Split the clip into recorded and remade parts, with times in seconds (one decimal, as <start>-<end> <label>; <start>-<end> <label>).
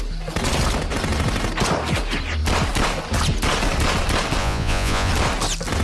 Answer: 0.0-4.4 recorded; 4.4-5.1 remade; 5.1-5.8 recorded